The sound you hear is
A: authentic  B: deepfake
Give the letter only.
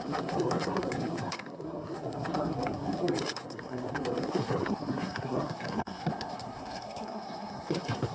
B